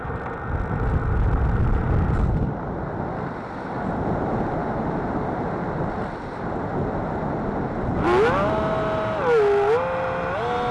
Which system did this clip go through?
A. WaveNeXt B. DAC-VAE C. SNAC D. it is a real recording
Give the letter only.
D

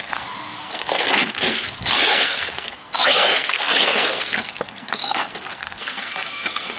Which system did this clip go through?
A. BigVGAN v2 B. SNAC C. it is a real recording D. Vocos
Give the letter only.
B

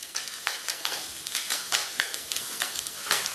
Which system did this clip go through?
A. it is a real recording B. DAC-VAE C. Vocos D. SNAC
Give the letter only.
D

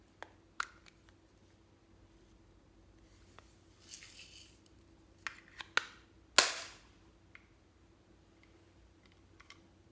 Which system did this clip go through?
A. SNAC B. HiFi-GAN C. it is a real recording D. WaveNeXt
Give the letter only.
C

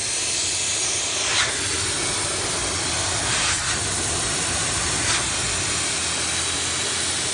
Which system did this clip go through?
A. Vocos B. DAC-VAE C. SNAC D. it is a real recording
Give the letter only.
D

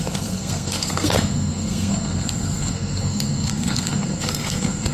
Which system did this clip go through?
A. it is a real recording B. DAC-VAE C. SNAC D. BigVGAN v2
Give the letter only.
C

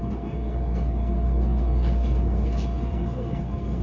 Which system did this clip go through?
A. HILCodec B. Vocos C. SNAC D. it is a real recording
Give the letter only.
C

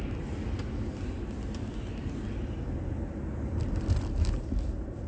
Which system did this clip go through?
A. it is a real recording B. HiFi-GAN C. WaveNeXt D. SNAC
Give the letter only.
A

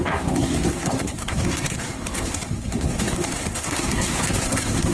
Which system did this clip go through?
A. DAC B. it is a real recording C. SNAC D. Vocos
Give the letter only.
C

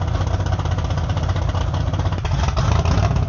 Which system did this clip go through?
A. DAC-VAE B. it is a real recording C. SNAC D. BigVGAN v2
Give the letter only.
B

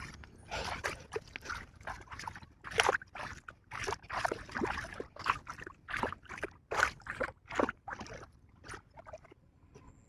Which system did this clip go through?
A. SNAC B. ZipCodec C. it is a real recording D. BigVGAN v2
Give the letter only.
C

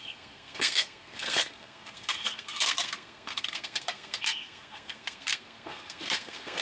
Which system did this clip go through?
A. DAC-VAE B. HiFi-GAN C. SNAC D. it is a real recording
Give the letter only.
C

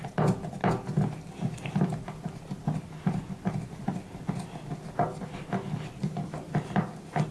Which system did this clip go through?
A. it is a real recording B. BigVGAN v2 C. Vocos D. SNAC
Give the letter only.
A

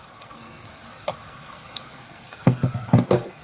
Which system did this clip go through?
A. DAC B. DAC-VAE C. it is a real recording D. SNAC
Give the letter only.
D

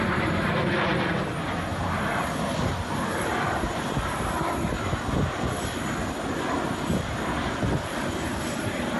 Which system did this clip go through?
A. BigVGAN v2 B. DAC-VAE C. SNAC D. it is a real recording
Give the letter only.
D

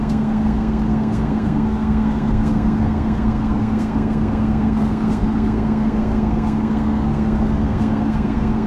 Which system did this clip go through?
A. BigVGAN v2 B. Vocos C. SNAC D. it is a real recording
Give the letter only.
C